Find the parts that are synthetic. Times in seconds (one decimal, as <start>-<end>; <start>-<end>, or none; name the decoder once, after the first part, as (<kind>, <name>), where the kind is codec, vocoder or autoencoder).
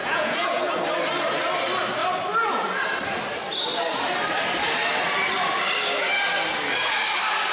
0.0-0.6 (vocoder, Vocos)